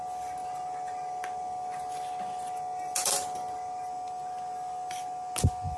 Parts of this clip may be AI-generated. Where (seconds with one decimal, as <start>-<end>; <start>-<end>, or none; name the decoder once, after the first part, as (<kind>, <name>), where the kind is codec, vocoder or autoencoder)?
none